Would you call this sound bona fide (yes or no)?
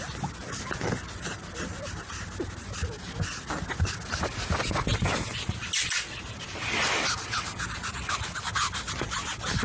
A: yes